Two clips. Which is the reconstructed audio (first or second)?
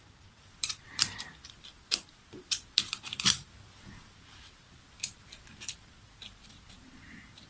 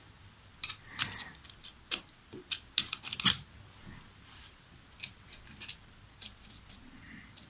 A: first